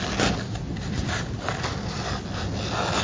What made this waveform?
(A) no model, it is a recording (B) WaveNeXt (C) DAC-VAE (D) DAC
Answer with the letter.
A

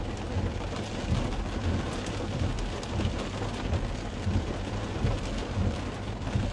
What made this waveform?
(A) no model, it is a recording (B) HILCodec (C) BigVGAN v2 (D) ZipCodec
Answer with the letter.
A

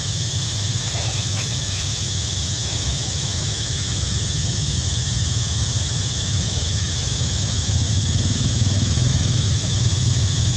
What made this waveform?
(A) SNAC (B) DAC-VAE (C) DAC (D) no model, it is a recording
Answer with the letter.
B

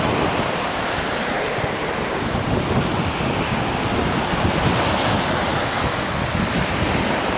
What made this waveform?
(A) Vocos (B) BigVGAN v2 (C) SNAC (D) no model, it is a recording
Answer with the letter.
D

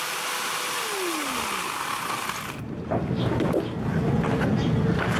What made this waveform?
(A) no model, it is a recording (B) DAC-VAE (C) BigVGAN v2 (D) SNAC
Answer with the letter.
A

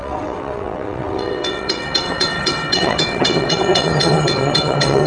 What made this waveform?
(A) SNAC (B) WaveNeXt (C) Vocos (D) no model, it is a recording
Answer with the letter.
B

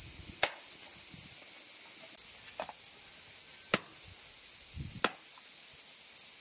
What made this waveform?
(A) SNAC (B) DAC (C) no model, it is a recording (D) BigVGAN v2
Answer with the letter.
C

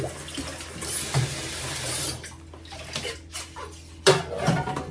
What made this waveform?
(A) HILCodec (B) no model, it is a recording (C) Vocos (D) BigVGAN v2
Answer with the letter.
B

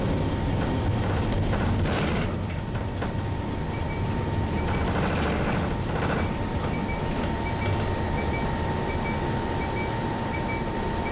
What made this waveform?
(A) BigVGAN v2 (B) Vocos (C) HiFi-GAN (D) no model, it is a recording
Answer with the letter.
D